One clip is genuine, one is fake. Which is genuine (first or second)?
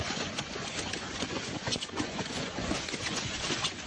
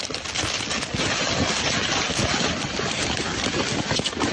second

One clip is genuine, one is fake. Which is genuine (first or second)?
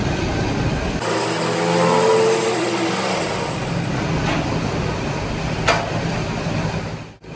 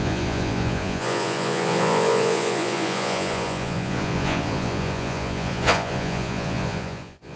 first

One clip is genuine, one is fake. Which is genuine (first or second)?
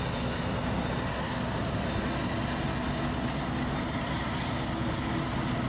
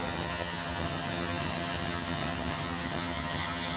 first